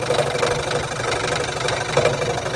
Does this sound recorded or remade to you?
recorded